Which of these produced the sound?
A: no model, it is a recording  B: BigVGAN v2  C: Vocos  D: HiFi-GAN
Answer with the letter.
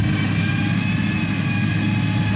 A